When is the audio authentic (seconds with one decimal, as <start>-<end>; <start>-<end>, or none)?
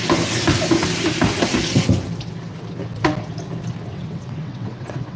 0.0-3.9